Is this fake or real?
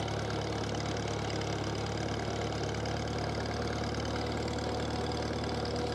real